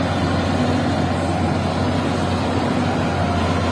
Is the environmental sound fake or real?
real